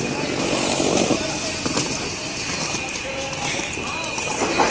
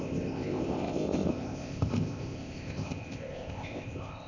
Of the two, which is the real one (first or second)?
first